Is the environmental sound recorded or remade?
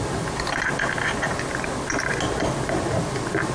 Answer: recorded